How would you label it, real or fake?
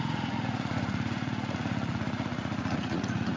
fake